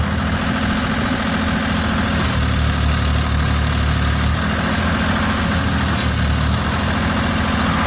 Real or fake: real